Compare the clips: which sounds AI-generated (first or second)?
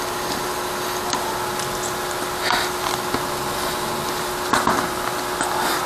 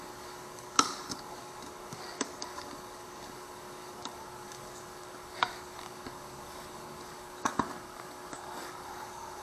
second